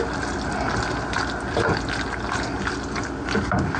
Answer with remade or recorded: recorded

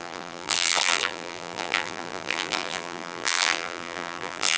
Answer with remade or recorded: remade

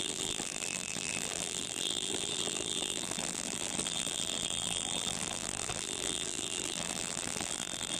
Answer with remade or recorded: remade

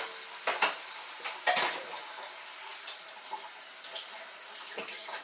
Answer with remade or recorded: recorded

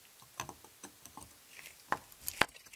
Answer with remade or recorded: recorded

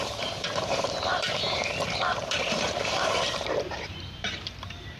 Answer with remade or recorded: remade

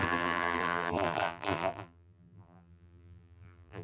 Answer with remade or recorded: remade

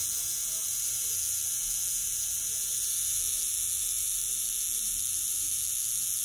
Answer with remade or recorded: remade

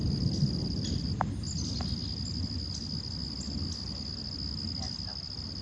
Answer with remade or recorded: recorded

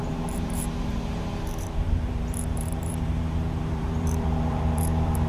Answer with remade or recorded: remade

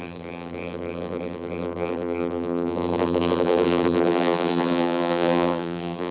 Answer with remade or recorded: remade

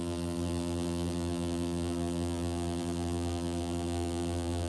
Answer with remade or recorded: remade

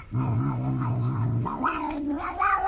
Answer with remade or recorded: remade